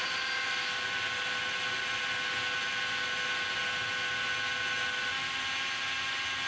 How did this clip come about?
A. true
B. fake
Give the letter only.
A